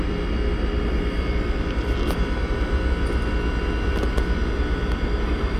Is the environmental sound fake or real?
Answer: real